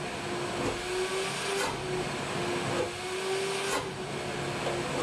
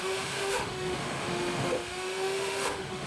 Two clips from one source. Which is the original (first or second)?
first